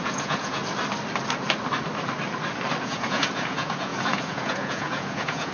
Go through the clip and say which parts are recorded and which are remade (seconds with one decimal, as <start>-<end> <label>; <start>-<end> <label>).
0.0-0.6 remade; 0.6-2.8 recorded; 2.8-5.5 remade